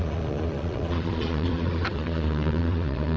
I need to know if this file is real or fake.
fake